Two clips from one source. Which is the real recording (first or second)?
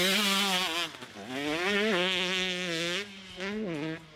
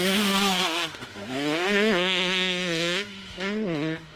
first